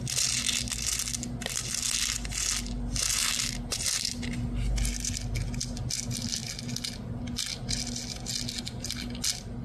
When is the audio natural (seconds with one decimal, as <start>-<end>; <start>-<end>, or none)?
0.0-9.6